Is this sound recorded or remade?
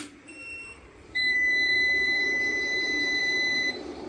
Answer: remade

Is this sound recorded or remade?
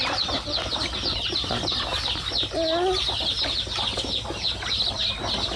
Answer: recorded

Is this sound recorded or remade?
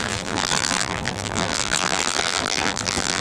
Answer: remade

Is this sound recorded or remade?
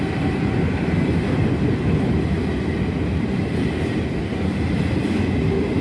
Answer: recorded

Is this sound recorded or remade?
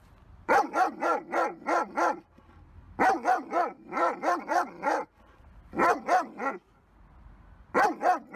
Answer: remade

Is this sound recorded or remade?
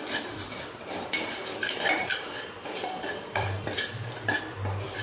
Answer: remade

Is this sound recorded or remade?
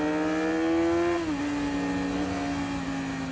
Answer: recorded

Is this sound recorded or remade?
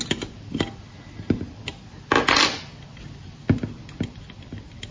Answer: recorded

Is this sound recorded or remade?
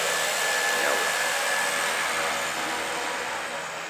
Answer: recorded